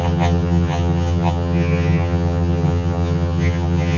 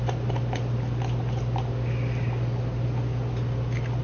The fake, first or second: first